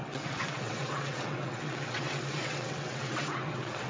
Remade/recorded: remade